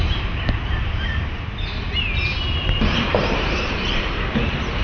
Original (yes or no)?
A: no